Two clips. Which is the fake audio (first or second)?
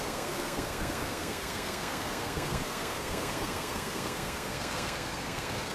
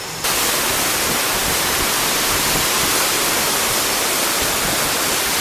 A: first